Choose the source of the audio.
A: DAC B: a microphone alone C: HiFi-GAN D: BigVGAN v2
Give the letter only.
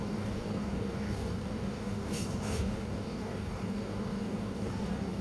A